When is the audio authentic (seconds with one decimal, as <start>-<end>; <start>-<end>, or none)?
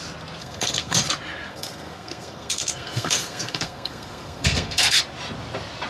0.0-0.4; 1.0-1.5; 5.0-5.9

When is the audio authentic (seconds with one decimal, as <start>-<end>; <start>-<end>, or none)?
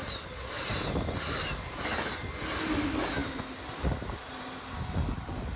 0.0-5.6